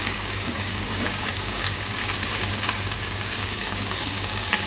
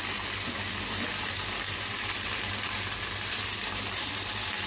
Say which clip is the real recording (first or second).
second